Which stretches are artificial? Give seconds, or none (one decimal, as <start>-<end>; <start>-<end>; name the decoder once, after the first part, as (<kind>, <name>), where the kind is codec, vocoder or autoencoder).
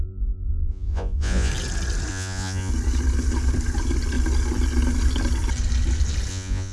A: 0.0-1.5 (vocoder, Vocos); 2.1-2.7; 6.3-6.7